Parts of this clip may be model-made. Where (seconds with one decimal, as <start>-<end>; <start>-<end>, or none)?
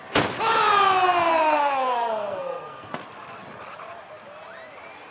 1.3-2.9